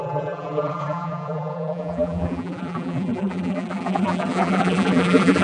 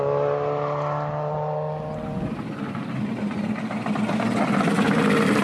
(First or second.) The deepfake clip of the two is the first